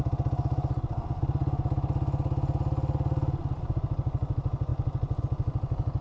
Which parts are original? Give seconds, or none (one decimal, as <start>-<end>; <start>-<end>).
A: 0.0-6.0